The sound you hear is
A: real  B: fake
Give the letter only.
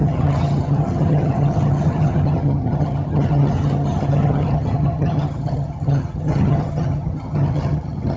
B